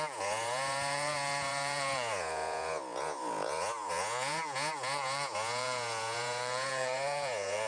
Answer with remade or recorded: remade